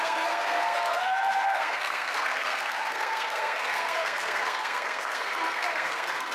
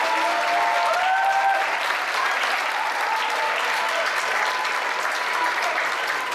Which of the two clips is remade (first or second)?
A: first